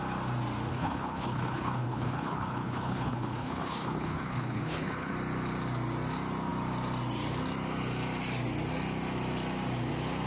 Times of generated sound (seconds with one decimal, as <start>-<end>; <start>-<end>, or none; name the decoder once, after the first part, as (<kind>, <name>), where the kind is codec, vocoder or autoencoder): 0.7-5.1 (codec, HILCodec)